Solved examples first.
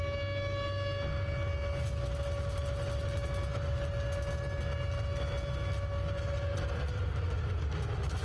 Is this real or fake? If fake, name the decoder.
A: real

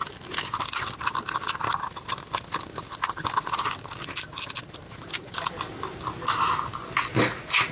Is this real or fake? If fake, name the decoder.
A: real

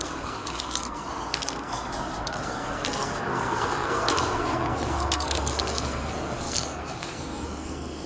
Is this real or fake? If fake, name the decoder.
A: fake, codec, SNAC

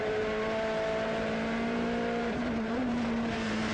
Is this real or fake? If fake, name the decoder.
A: fake, vocoder, BigVGAN v2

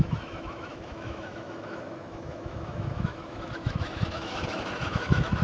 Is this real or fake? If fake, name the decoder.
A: fake, autoencoder, DAC-VAE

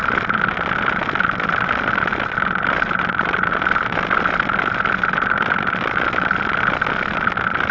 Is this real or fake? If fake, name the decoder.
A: real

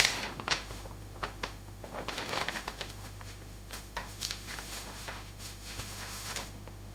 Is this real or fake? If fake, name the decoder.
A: fake, autoencoder, DAC-VAE